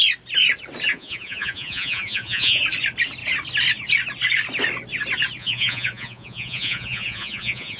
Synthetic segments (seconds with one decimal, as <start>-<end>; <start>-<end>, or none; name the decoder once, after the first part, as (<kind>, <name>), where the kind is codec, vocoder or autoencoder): 0.9-2.6 (vocoder, Vocos); 5.4-7.8